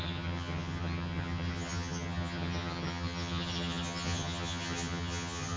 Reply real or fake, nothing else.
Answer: fake